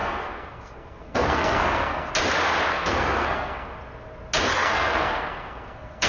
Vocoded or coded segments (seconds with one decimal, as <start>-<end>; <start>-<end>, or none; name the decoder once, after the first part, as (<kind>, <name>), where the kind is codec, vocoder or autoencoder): 0.0-2.1 (codec, SNAC); 2.7-3.7; 4.5-6.1